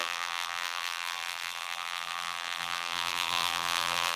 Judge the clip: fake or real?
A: fake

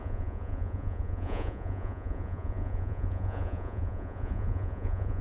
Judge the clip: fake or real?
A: fake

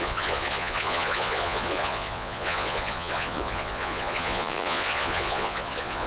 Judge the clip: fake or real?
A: fake